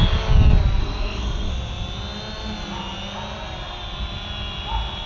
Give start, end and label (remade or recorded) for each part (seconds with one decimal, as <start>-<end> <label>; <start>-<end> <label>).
0.0-0.8 recorded; 0.8-1.5 remade; 1.5-5.1 recorded